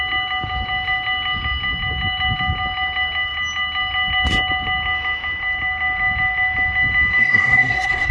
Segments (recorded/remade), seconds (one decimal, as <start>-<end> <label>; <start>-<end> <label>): 0.0-7.2 recorded; 7.2-8.1 remade